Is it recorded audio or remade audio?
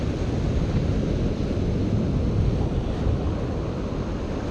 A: recorded